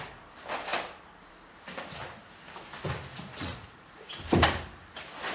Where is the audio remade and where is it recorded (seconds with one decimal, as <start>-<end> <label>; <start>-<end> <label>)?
0.0-3.1 recorded; 3.1-4.1 remade; 4.1-5.3 recorded